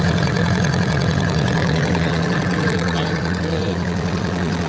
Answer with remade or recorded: remade